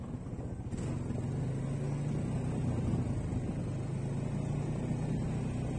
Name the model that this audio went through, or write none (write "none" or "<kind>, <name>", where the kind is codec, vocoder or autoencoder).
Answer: none